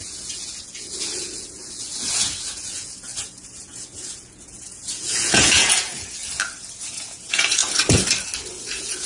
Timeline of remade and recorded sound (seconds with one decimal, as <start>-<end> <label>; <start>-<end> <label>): 0.0-6.2 remade; 6.2-6.8 recorded; 6.8-7.6 remade; 7.6-8.6 recorded; 8.6-9.1 remade